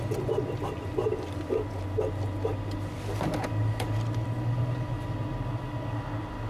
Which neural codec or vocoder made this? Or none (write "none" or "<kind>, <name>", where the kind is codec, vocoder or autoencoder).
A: none